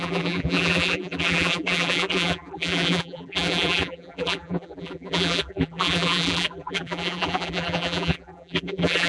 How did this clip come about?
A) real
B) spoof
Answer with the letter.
B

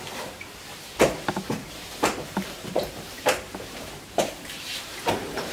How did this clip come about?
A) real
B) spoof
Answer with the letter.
B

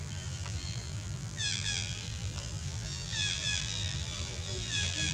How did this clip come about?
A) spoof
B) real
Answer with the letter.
A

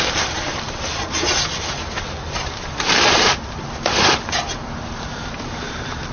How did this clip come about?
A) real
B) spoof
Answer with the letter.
B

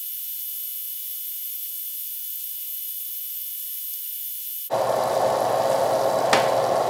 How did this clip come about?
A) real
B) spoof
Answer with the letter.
A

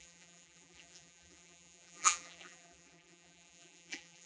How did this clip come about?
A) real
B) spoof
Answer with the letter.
B